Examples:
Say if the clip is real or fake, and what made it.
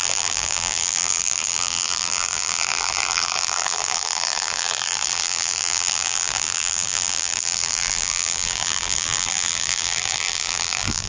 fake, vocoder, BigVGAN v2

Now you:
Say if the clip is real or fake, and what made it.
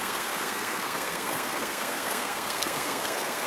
fake, codec, SNAC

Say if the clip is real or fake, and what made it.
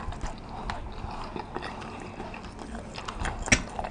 real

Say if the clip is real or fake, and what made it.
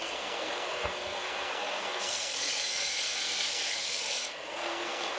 fake, codec, SNAC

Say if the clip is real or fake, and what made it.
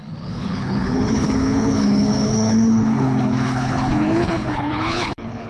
fake, codec, HILCodec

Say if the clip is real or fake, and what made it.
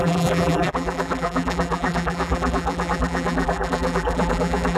fake, vocoder, BigVGAN v2